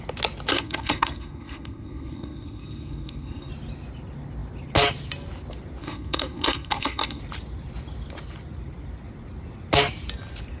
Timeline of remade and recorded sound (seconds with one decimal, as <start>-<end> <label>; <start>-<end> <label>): 0.0-0.5 recorded; 0.5-3.5 remade; 3.5-5.8 recorded; 5.8-7.2 remade; 7.2-10.6 recorded